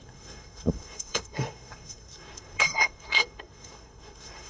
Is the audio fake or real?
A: fake